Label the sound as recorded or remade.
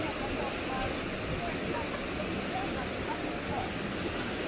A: recorded